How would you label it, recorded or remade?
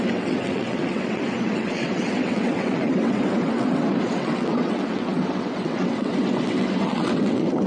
remade